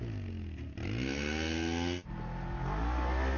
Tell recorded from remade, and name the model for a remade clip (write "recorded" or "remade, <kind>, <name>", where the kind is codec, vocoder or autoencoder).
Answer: recorded